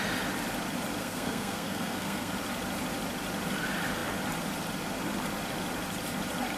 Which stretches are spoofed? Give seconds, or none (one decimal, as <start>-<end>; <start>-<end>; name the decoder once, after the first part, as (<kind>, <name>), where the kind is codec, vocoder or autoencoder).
1.0-2.3 (codec, SNAC)